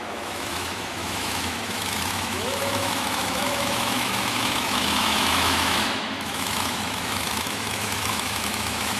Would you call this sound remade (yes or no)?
yes